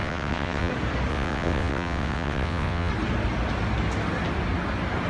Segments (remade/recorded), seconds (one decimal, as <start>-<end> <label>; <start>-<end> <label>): 0.0-0.7 remade; 0.7-1.1 recorded; 1.1-2.9 remade; 2.9-5.1 recorded